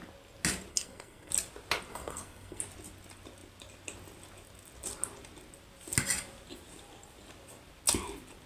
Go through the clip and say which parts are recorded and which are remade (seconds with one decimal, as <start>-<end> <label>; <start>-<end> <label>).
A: 0.0-0.7 recorded; 0.7-1.3 remade; 1.3-1.9 recorded; 1.9-2.6 remade; 2.6-8.5 recorded

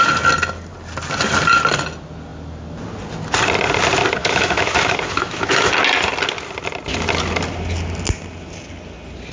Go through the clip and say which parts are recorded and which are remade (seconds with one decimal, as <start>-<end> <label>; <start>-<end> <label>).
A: 0.0-4.2 recorded; 4.2-5.7 remade; 5.7-9.3 recorded

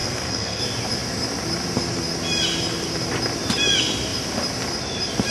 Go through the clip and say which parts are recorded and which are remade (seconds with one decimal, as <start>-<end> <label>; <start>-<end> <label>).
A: 0.0-0.6 remade; 0.6-5.3 recorded